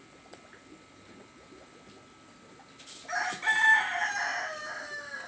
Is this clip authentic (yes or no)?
yes